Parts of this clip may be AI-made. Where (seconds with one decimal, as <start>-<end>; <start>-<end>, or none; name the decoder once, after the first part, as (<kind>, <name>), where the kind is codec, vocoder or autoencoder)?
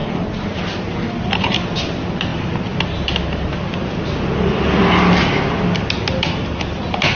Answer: none